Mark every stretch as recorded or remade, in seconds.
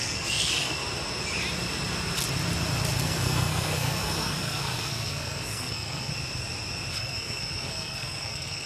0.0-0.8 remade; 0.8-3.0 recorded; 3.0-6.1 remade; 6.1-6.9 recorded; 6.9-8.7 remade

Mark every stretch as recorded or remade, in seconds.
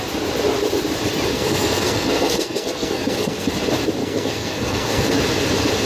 0.0-1.3 recorded; 1.3-3.5 remade; 3.5-4.0 recorded; 4.0-5.2 remade; 5.2-5.9 recorded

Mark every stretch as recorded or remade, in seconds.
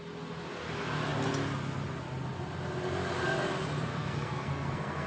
0.0-3.9 recorded; 3.9-5.1 remade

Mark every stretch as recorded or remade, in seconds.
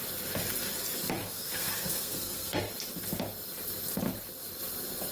0.0-1.2 recorded; 1.2-2.6 remade; 2.6-5.1 recorded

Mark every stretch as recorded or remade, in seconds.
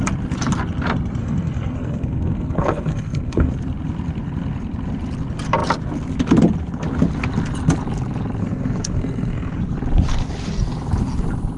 0.0-1.2 recorded; 1.2-3.5 remade; 3.5-8.4 recorded; 8.4-9.6 remade; 9.6-11.6 recorded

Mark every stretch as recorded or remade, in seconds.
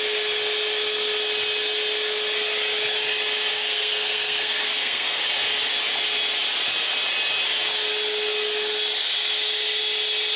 0.0-3.5 recorded; 3.5-5.2 remade; 5.2-10.4 recorded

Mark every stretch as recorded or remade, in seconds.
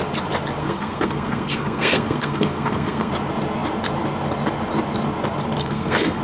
0.0-0.6 recorded; 0.6-3.1 remade; 3.1-5.6 recorded; 5.6-6.2 remade